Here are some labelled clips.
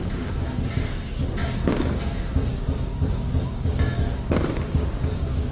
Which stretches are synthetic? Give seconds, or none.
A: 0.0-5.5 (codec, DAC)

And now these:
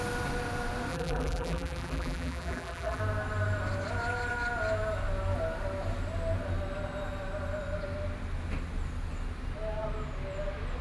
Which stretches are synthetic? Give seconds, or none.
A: 0.9-3.0 (vocoder, BigVGAN v2)

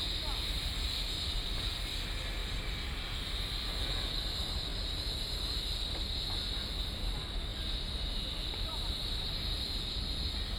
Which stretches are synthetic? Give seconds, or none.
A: none

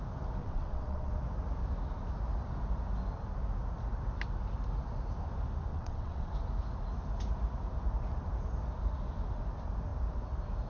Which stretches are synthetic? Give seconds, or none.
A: 0.4-1.1 (vocoder, WaveNeXt); 5.7-6.3

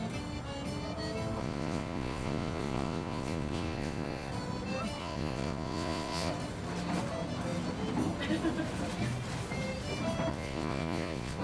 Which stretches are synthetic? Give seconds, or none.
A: 1.4-4.3 (vocoder, Vocos); 5.0-6.3; 10.3-11.4